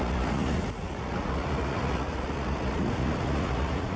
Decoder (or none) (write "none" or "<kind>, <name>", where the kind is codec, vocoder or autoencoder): vocoder, Vocos